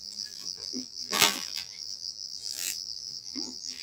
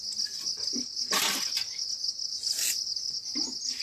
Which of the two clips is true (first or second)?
second